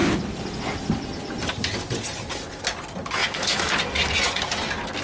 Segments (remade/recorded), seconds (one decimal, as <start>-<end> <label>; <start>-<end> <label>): 0.0-3.2 recorded; 3.2-3.8 remade; 3.8-5.0 recorded